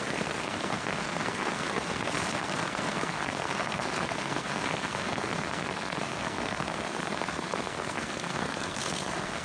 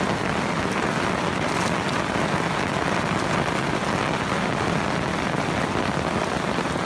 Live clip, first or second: second